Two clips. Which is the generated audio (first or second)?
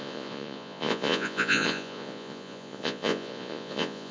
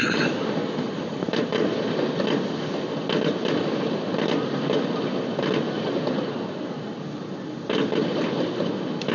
first